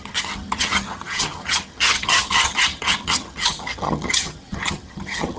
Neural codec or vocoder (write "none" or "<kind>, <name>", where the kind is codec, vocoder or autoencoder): vocoder, HiFi-GAN